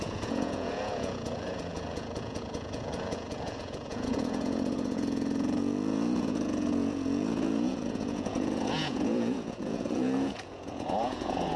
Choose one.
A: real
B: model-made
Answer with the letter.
B